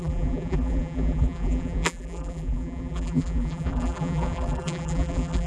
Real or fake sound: fake